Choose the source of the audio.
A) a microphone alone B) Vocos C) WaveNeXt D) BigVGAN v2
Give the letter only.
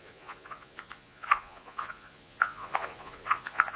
B